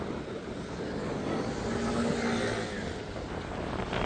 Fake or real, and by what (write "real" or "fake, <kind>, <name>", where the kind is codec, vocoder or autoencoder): real